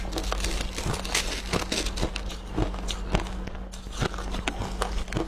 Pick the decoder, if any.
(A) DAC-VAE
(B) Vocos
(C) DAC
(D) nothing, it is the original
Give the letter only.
D